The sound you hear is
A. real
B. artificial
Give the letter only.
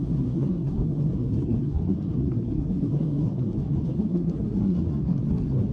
B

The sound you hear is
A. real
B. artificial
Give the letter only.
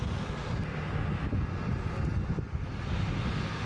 A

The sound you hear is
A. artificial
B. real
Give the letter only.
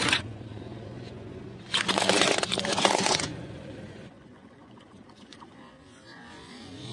A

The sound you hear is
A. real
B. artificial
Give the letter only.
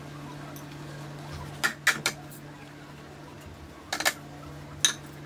A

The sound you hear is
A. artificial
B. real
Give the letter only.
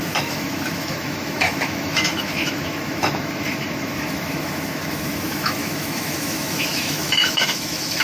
A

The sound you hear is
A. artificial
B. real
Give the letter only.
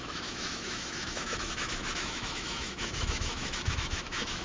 A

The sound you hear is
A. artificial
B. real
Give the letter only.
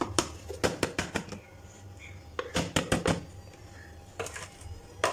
B